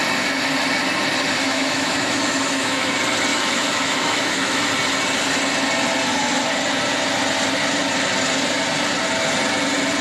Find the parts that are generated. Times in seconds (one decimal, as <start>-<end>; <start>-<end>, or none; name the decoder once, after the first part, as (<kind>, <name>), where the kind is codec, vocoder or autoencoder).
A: 1.4-2.9 (autoencoder, DAC-VAE); 3.3-4.7